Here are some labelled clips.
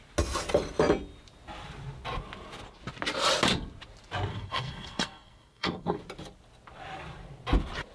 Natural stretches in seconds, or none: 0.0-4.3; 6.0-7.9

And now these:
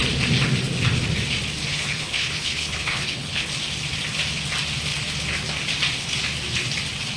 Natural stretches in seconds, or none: 0.0-1.7; 3.5-7.2

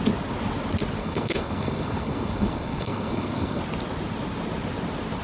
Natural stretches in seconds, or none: 0.0-1.0; 3.6-5.2

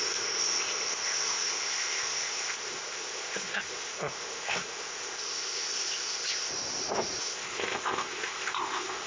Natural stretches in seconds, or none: 6.5-7.2